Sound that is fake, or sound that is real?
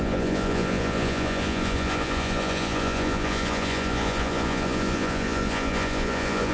fake